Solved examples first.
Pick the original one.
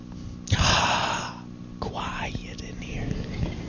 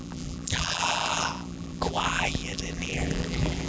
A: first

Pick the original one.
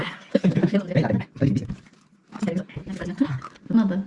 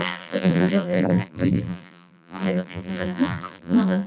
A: first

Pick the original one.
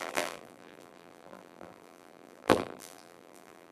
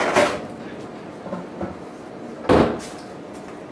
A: second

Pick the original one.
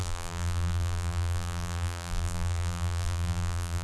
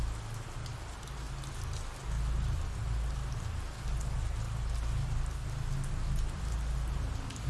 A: second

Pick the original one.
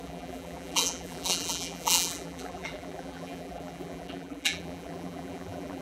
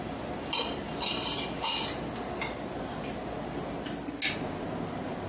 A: second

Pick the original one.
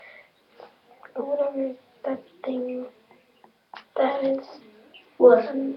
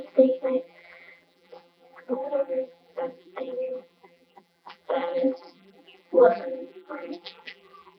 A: first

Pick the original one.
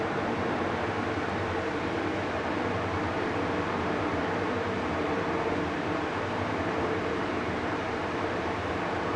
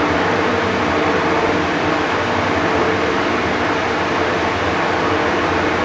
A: second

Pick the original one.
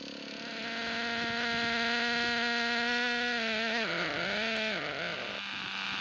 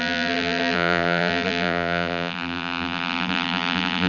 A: first